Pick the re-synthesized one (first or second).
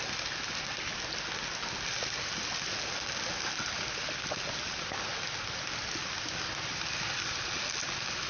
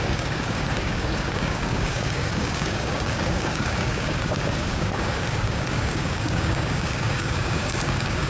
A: second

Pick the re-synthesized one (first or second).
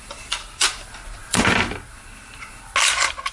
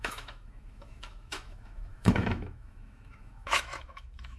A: second